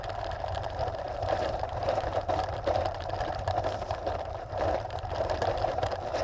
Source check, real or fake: fake